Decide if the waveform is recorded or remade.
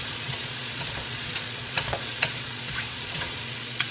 remade